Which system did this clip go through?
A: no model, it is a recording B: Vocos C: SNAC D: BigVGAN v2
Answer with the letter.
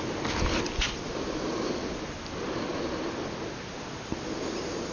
A